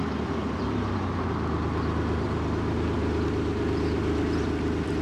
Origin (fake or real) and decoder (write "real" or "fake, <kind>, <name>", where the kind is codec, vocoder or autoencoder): real